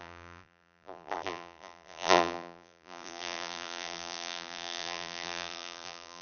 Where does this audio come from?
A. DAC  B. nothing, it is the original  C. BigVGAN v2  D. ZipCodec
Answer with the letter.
C